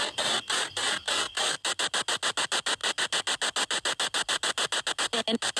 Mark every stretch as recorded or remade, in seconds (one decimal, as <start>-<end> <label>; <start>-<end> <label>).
0.0-5.6 recorded